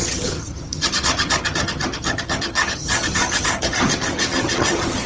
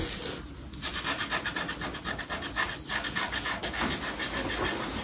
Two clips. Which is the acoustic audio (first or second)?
second